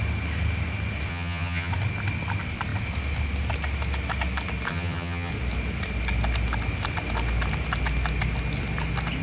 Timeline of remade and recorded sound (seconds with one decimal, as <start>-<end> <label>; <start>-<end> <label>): 0.0-1.1 recorded; 1.1-1.7 remade; 1.7-4.7 recorded; 4.7-5.3 remade; 5.3-9.2 recorded